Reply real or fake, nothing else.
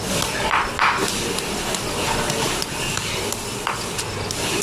real